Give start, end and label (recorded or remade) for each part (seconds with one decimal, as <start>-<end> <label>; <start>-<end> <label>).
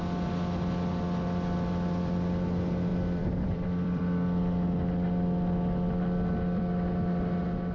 0.0-2.9 recorded; 2.9-4.0 remade; 4.0-7.7 recorded